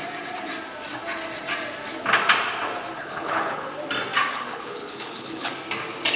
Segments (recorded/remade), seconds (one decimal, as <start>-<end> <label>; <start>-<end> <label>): 0.0-3.0 recorded; 3.0-3.7 remade; 3.7-4.3 recorded; 4.3-5.5 remade; 5.5-6.2 recorded